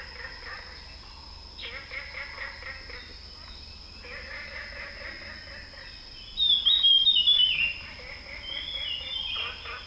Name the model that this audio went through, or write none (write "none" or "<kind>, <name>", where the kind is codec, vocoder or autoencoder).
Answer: none